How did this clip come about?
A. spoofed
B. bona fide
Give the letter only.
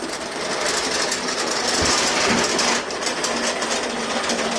B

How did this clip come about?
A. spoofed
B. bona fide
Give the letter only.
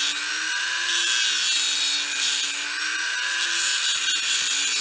B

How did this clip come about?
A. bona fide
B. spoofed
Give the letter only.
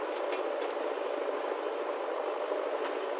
A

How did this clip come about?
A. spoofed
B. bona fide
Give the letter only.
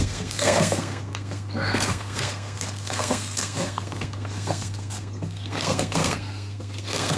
A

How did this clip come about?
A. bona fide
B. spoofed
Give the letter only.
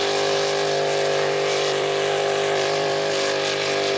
B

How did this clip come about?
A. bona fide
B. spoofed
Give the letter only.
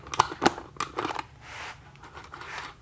A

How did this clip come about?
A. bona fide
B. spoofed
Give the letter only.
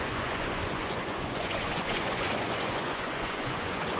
B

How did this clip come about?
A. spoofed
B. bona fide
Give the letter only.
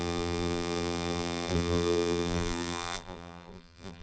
A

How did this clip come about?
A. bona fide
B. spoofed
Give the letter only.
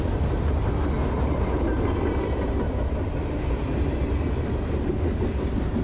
A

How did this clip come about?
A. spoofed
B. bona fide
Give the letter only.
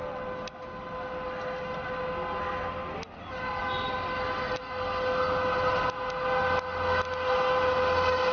B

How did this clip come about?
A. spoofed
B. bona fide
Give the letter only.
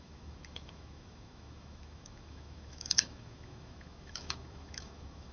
A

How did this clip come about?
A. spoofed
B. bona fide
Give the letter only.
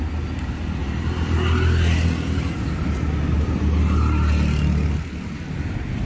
B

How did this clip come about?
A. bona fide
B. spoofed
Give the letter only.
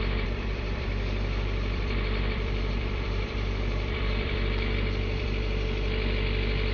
B